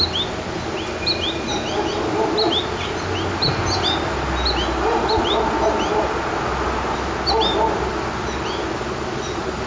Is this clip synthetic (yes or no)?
no